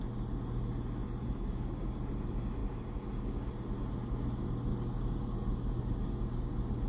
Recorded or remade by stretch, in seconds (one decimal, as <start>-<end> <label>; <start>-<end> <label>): 0.0-1.0 recorded; 1.0-2.1 remade; 2.1-4.7 recorded; 4.7-6.5 remade; 6.5-6.9 recorded